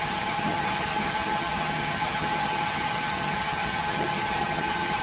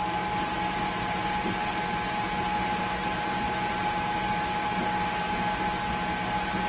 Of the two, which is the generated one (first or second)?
first